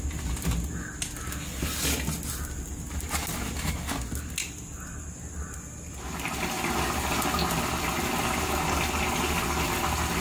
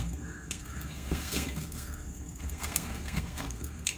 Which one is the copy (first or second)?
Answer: second